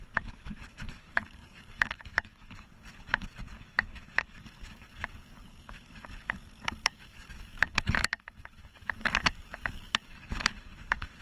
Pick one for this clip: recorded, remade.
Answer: remade